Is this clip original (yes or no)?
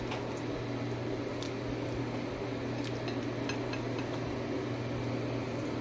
yes